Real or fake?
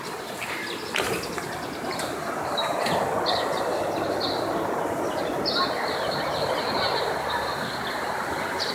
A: real